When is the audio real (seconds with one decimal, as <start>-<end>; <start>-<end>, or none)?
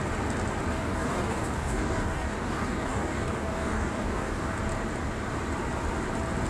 0.0-0.7; 4.6-6.5